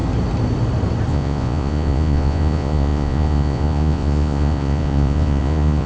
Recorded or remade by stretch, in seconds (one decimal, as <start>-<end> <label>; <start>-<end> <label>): 0.0-1.1 recorded; 1.1-5.9 remade